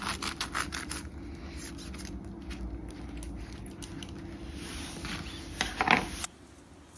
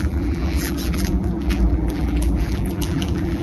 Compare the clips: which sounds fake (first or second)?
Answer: second